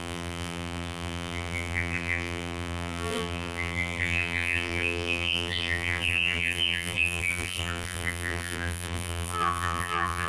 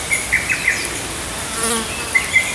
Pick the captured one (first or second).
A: second